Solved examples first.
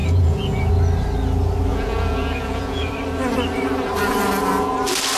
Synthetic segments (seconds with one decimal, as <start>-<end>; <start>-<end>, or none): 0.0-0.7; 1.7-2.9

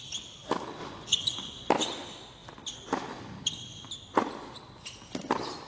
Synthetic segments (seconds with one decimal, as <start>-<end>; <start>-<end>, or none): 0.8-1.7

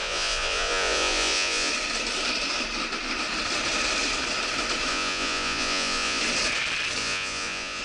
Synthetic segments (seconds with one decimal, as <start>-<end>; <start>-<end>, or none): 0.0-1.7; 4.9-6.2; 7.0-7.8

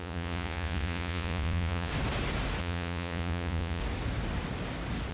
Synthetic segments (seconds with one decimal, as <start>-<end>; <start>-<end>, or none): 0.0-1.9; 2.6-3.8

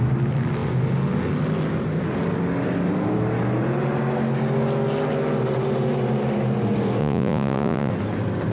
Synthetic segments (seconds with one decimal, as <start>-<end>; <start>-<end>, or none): 7.0-7.9